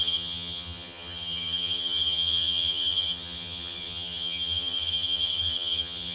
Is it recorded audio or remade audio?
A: remade